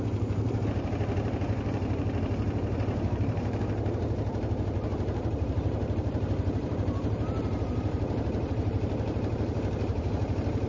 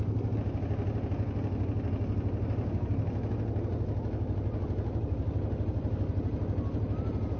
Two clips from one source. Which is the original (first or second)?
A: second